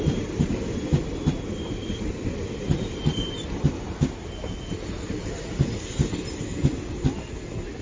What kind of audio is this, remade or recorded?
recorded